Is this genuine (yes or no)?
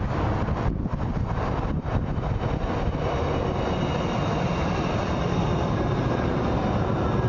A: yes